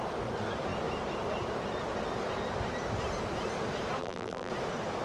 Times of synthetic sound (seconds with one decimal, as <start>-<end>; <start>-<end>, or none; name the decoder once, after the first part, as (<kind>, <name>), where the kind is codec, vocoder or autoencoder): 4.0-4.5 (vocoder, BigVGAN v2)